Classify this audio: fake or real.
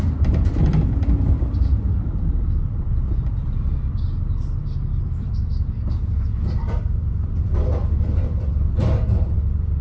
fake